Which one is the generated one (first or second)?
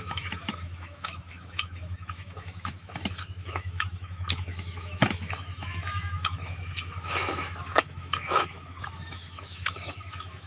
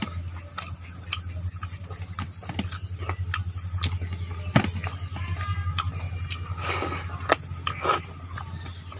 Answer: first